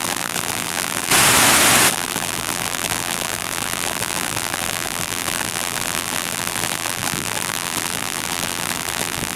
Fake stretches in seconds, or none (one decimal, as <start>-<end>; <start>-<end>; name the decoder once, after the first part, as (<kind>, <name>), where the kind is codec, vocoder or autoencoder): 0.0-1.1 (vocoder, BigVGAN v2); 1.9-9.4